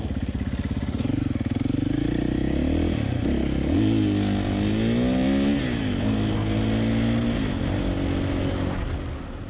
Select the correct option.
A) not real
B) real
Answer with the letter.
B